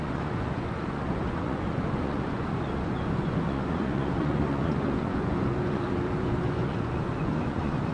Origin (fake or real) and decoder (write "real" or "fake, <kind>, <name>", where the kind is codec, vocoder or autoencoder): fake, vocoder, Vocos